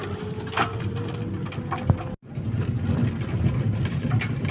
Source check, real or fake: real